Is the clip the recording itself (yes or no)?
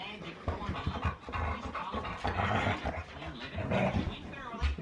yes